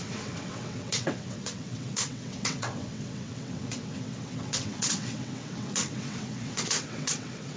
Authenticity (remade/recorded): remade